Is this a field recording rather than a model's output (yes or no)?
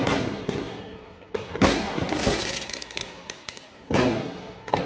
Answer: no